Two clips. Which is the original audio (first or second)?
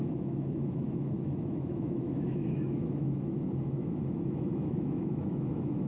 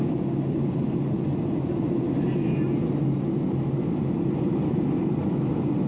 second